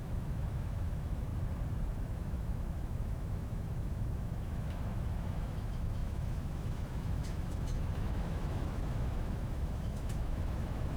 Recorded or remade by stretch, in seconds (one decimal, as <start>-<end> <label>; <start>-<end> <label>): 0.0-1.3 remade; 1.3-2.0 recorded; 2.0-11.0 remade